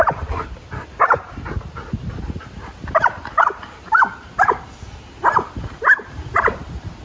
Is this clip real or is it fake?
real